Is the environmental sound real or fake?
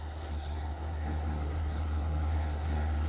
fake